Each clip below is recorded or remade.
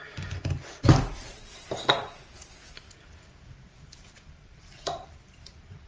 recorded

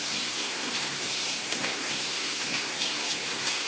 remade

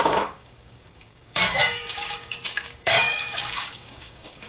remade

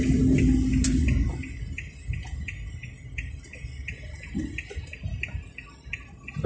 recorded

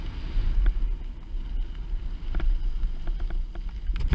recorded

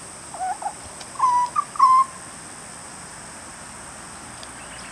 recorded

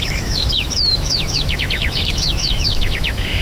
remade